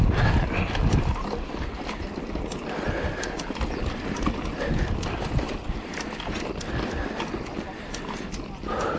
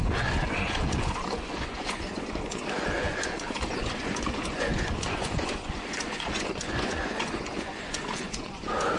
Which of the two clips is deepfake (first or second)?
second